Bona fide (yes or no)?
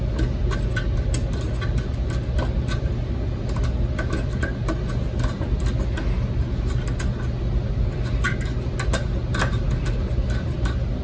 yes